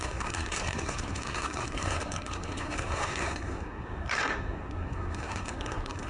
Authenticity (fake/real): fake